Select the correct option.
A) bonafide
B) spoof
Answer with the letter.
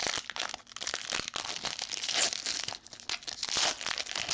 A